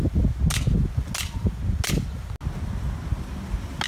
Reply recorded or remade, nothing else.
recorded